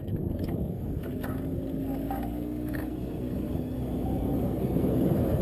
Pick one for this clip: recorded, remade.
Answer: remade